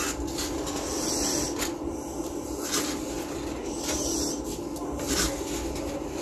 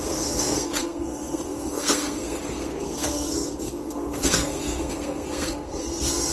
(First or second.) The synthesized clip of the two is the second